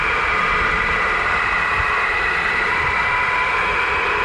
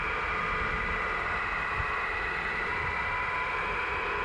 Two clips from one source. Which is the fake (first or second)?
first